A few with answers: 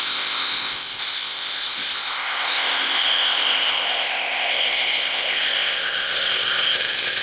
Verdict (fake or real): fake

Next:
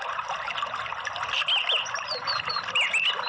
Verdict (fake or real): real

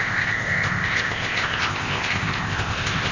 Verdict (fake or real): fake